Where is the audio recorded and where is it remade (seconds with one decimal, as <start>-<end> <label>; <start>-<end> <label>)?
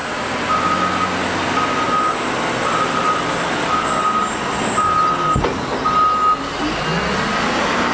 0.0-7.9 recorded